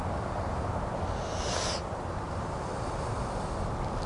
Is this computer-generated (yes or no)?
no